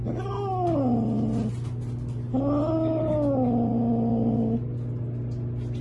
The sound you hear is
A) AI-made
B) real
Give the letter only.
B